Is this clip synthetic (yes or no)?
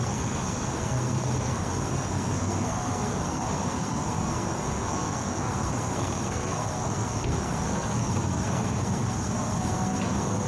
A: yes